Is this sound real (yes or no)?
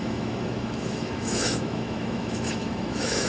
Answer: no